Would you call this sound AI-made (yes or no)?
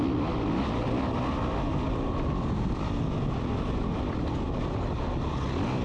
no